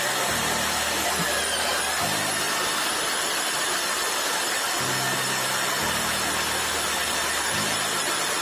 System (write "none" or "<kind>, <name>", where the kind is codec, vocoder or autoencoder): none